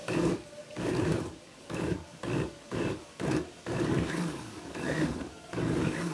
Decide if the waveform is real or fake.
fake